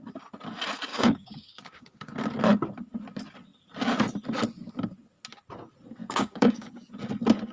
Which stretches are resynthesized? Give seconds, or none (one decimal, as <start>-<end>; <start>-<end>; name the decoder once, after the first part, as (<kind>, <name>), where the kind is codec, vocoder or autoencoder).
0.9-2.1 (codec, DAC); 6.0-6.9

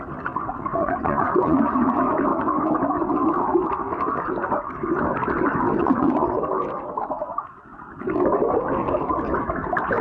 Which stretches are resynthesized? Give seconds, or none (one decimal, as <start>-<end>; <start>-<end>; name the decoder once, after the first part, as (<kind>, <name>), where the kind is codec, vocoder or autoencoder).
0.7-1.9 (vocoder, Vocos); 5.8-6.4

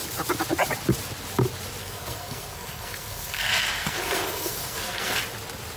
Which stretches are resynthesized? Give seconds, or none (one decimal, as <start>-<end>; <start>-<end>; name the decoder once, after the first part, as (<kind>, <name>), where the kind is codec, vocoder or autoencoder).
1.8-5.2 (codec, SNAC)

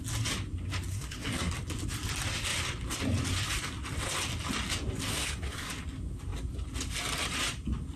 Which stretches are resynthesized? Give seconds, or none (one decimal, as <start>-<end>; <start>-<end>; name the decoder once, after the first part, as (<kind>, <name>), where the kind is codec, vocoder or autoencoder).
0.9-1.5 (codec, SNAC); 5.1-5.7

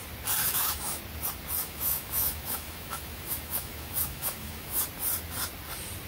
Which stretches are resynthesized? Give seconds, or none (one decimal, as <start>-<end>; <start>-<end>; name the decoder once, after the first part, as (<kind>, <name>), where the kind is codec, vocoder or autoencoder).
0.4-1.0 (autoencoder, DAC-VAE); 1.6-4.8

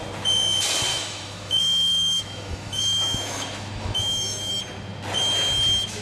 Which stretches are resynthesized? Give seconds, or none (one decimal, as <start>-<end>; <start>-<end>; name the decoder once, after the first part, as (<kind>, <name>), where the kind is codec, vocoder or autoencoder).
0.9-4.5 (autoencoder, DAC-VAE)

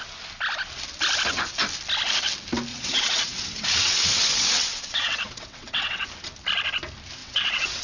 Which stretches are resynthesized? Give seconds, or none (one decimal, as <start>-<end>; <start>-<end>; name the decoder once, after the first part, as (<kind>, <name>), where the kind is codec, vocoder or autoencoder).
2.7-6.1 (vocoder, WaveNeXt); 7.2-7.8